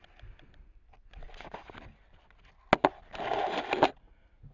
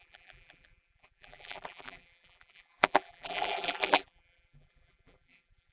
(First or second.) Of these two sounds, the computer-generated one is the second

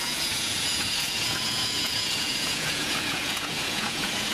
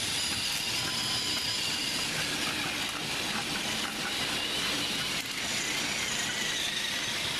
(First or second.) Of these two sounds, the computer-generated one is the first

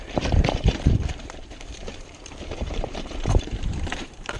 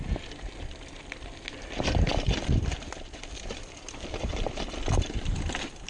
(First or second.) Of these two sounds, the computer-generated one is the first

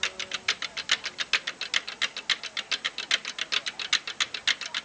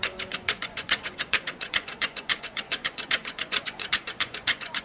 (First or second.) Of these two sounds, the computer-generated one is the second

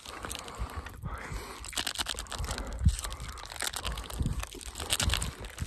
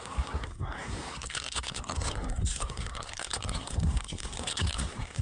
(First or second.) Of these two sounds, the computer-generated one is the second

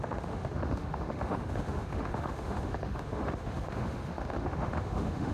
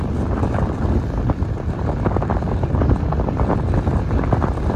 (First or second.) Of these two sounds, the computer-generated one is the first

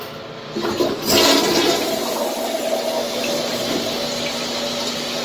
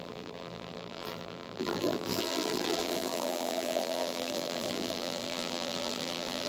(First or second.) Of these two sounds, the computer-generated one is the second